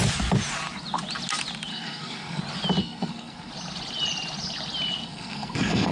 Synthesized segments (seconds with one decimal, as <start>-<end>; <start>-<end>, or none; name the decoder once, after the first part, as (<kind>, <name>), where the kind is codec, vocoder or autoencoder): 1.7-2.4 (codec, SNAC); 2.8-3.5; 5.0-5.9